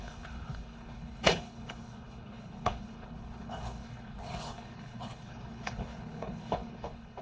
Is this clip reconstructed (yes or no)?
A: yes